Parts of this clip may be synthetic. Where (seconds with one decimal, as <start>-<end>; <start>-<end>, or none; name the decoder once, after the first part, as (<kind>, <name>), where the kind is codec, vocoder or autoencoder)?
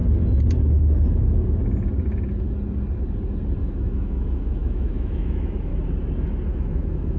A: 3.6-5.7 (autoencoder, DAC-VAE); 6.5-7.2